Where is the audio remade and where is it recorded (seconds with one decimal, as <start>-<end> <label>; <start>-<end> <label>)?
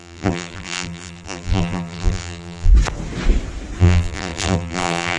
0.0-2.7 remade; 2.7-3.8 recorded; 3.8-5.2 remade